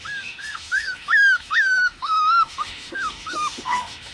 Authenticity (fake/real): fake